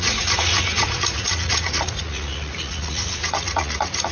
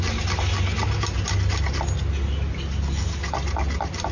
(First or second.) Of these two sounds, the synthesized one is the first